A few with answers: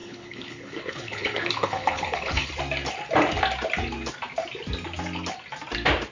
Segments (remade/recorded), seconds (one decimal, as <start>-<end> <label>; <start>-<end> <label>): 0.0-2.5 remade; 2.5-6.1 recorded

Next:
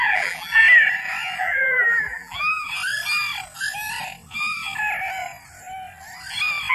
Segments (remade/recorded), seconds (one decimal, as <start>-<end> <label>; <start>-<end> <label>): 0.0-0.6 remade; 0.6-1.4 recorded; 1.4-2.7 remade; 2.7-6.7 recorded

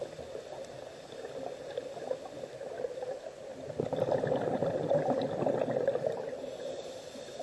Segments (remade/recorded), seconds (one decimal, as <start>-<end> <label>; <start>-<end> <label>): 0.0-2.8 recorded; 2.8-7.4 remade

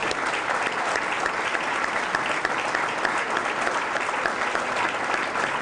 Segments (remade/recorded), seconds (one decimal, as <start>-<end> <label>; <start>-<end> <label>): 0.0-5.6 recorded

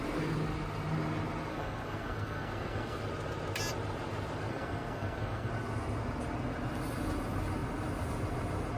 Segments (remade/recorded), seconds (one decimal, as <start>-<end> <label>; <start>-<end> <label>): 0.0-1.5 recorded; 1.5-3.0 remade; 3.0-4.5 recorded; 4.5-5.5 remade; 5.5-8.8 recorded

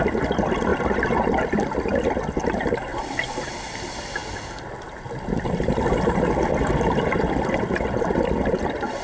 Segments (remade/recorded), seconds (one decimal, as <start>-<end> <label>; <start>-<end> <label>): 0.0-9.0 recorded

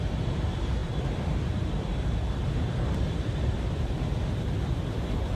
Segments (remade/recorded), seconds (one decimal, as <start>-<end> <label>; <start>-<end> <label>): 0.0-0.8 recorded; 0.8-4.0 remade; 4.0-5.3 recorded

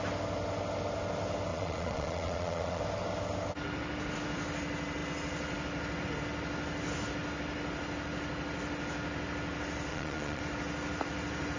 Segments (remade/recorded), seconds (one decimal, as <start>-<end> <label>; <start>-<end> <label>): 0.0-1.5 recorded; 1.5-2.8 remade; 2.8-9.9 recorded; 9.9-10.4 remade; 10.4-11.6 recorded